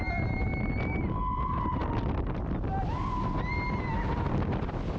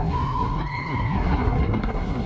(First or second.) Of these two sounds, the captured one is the first